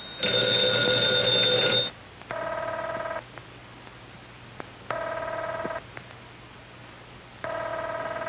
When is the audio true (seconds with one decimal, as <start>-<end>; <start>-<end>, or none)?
0.0-8.3